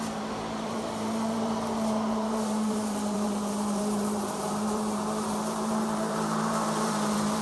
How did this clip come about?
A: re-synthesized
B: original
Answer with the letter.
A